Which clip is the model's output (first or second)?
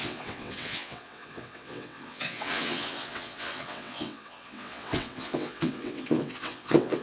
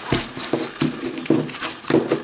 first